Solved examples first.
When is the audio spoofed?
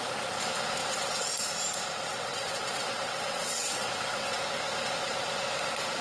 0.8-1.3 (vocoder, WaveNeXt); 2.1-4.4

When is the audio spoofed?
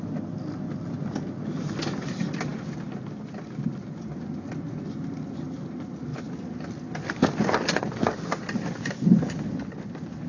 none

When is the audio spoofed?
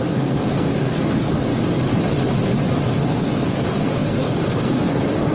0.0-1.5 (codec, SNAC); 3.0-5.3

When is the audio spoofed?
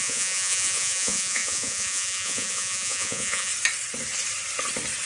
0.0-3.5 (vocoder, Vocos)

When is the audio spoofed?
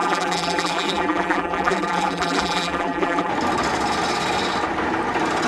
0.0-3.3 (vocoder, BigVGAN v2)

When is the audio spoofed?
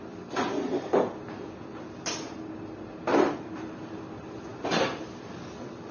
none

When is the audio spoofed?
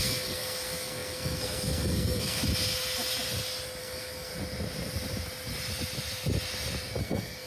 0.0-2.4 (codec, SNAC); 3.8-4.3; 7.0-7.5